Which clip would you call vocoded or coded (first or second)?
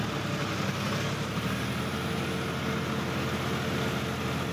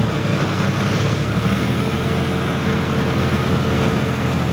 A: second